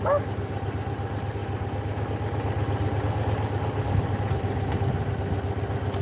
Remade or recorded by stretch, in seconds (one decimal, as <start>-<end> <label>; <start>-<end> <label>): 0.0-6.0 recorded